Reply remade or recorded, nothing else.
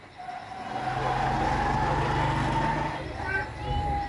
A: recorded